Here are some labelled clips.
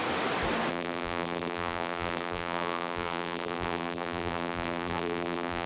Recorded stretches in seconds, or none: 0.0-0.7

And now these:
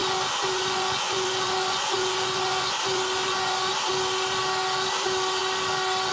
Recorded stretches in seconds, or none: 3.7-6.1